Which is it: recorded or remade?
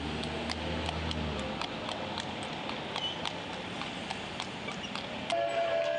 recorded